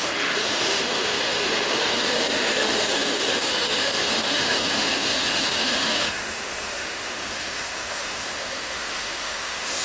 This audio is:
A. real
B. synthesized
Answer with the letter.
B